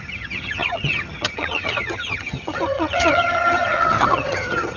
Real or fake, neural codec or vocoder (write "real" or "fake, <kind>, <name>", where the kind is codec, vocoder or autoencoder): fake, vocoder, HiFi-GAN